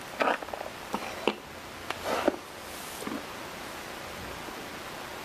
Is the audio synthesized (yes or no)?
no